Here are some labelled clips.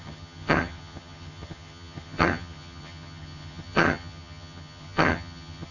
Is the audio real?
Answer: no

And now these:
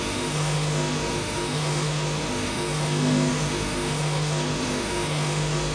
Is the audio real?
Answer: no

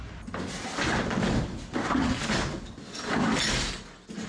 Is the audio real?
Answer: yes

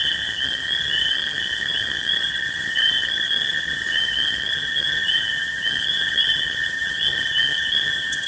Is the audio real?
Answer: no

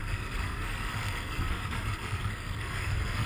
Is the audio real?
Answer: no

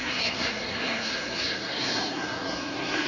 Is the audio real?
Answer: no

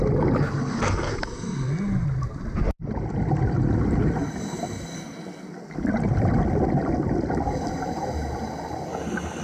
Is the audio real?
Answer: yes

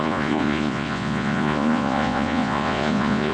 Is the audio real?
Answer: no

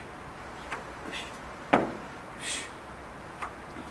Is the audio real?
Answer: no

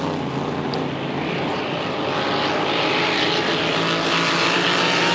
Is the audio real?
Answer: yes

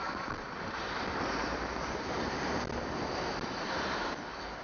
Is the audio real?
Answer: yes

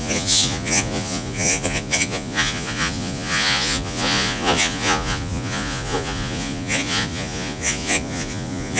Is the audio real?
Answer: no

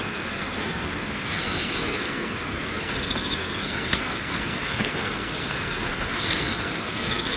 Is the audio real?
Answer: no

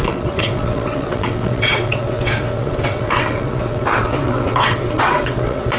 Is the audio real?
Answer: no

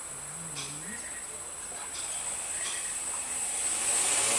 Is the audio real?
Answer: yes